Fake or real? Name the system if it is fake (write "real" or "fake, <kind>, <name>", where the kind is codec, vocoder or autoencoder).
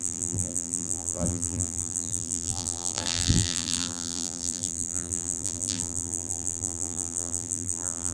fake, vocoder, BigVGAN v2